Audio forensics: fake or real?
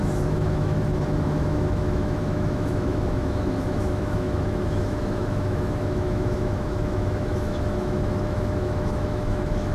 fake